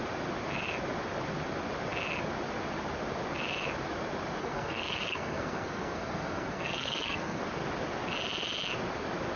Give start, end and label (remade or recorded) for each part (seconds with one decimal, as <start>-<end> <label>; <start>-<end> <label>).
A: 0.0-4.4 recorded; 4.4-7.4 remade; 7.4-9.4 recorded